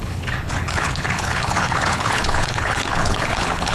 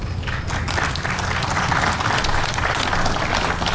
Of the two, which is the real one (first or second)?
second